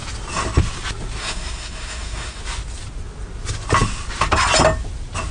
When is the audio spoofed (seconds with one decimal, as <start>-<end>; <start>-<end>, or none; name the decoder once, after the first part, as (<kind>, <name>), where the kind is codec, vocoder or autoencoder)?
1.2-2.4 (codec, SNAC)